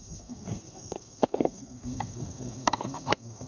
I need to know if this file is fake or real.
fake